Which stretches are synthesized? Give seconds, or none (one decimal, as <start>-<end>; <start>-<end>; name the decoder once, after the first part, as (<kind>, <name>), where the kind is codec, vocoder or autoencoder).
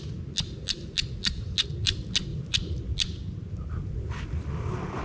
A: none